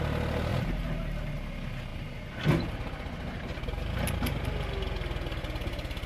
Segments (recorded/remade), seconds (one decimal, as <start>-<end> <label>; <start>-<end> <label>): 0.0-0.5 recorded; 0.5-1.3 remade; 1.3-6.1 recorded